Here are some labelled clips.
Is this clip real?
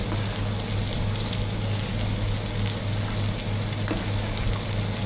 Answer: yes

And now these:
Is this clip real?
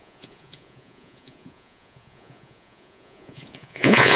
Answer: no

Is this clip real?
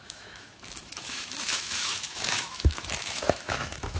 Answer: no